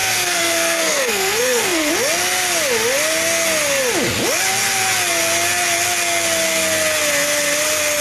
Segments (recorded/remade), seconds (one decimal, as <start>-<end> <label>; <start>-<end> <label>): 0.0-1.9 remade; 1.9-8.0 recorded